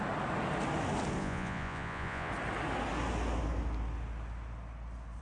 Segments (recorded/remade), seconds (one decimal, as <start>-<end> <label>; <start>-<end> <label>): 0.0-1.2 recorded; 1.2-2.3 remade; 2.3-5.2 recorded